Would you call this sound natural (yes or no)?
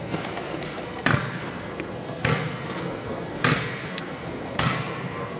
no